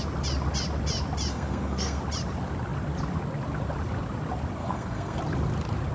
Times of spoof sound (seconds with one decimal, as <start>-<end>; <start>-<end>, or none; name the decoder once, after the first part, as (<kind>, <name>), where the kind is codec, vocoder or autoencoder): 1.3-2.0 (codec, SNAC); 4.6-5.2